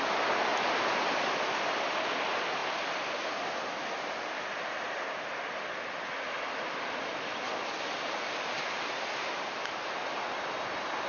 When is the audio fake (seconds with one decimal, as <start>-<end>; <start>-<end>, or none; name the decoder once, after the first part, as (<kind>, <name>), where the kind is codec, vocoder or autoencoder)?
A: none